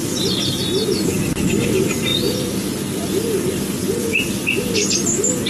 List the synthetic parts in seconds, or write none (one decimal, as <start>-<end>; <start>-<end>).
0.0-0.6